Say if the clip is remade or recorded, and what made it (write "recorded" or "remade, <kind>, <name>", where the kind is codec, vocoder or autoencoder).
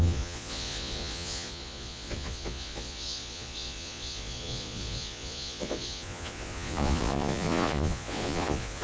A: remade, vocoder, Vocos